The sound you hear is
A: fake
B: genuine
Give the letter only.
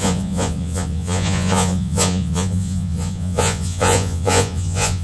A